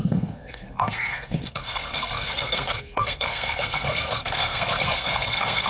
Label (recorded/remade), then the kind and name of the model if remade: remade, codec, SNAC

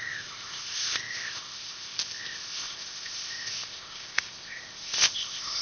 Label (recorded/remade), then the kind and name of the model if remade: remade, codec, ZipCodec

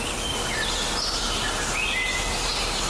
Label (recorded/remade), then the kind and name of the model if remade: recorded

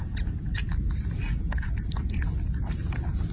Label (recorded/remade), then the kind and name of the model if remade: recorded